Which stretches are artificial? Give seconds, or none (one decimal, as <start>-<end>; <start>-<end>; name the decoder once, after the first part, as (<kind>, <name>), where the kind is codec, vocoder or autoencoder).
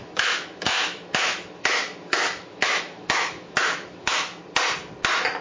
0.0-4.4 (autoencoder, DAC-VAE)